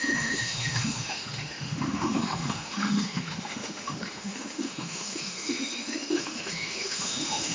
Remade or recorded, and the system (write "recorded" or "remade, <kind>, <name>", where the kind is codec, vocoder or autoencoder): remade, autoencoder, DAC-VAE